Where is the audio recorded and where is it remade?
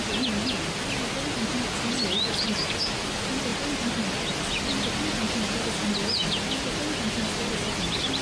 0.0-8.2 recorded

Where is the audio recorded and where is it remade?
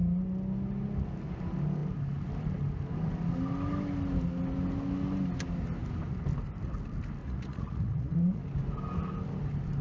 0.0-7.2 recorded; 7.2-8.4 remade; 8.4-9.8 recorded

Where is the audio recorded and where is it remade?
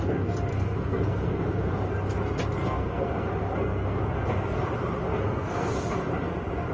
0.0-0.5 recorded; 0.5-1.7 remade; 1.7-2.6 recorded; 2.6-4.0 remade; 4.0-5.1 recorded; 5.1-5.7 remade; 5.7-6.7 recorded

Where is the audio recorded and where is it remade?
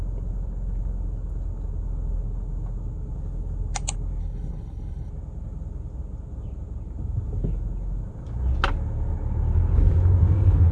0.0-4.2 recorded; 4.2-5.1 remade; 5.1-10.7 recorded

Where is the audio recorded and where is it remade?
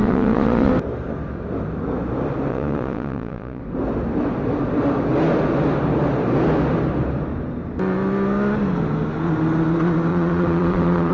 0.0-0.7 remade; 0.7-2.5 recorded; 2.5-3.6 remade; 3.6-10.1 recorded; 10.1-11.1 remade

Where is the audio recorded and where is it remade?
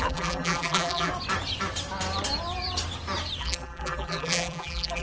0.0-1.1 remade; 1.1-3.4 recorded; 3.4-5.0 remade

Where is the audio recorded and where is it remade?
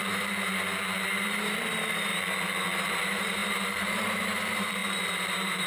0.0-2.1 remade; 2.1-2.9 recorded; 2.9-5.7 remade